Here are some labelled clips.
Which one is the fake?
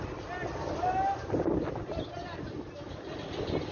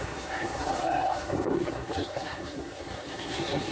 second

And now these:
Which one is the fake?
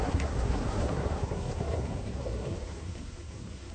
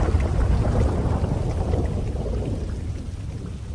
first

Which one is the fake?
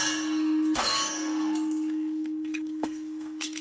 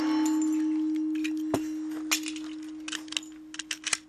first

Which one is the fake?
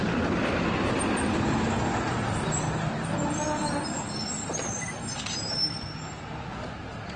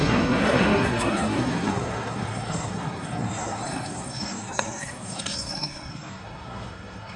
second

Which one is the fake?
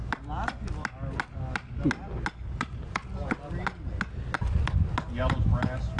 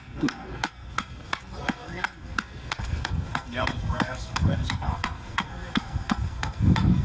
second